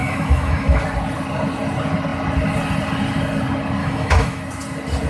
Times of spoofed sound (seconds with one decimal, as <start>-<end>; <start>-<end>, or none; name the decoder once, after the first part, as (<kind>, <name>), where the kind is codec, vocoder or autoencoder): 0.0-0.8 (autoencoder, DAC-VAE); 3.8-4.4